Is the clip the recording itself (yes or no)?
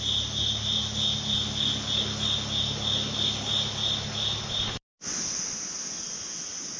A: yes